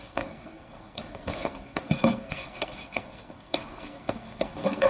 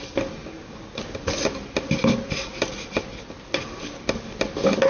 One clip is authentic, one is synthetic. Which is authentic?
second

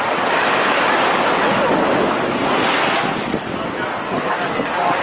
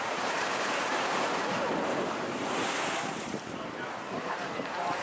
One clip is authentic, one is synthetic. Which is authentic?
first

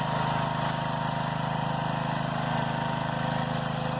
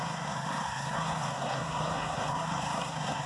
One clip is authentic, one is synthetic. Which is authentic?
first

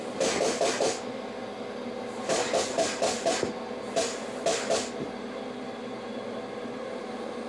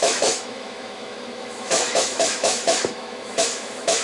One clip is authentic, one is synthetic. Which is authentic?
first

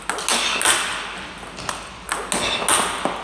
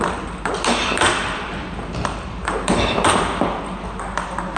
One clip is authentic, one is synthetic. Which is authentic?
first